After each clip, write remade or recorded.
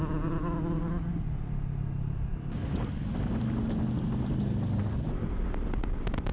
recorded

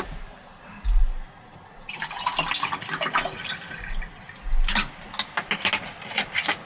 recorded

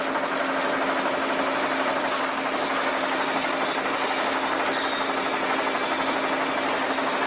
recorded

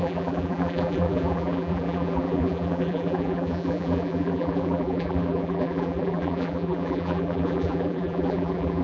remade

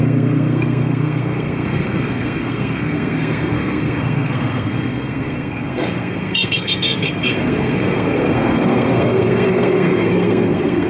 remade